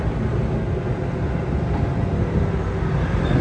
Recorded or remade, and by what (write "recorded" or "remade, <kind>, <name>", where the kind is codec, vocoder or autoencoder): recorded